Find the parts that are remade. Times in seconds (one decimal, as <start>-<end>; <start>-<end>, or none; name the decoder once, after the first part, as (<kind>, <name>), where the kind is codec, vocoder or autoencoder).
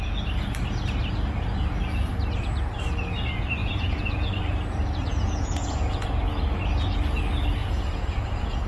3.6-4.3 (vocoder, Vocos); 5.1-6.2; 7.6-8.7